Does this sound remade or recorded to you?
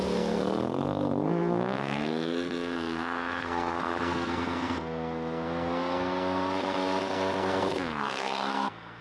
remade